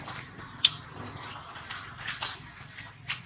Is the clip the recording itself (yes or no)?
no